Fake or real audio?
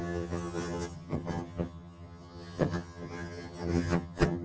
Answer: fake